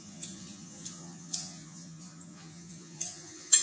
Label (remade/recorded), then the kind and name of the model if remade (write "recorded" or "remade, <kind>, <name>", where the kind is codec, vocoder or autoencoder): remade, vocoder, Vocos